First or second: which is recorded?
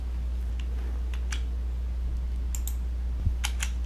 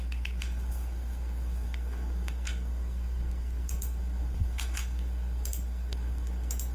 first